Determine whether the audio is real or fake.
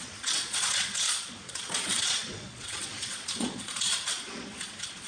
fake